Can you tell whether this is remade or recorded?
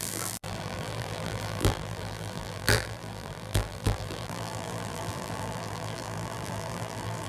remade